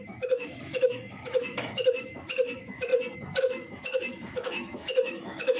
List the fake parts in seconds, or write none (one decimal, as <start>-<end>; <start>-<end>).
0.0-2.9; 3.4-5.6